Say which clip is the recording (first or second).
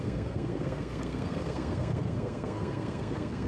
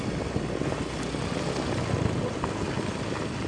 second